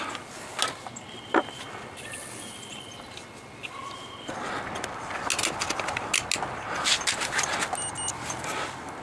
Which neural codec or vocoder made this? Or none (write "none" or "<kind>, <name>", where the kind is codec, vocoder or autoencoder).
none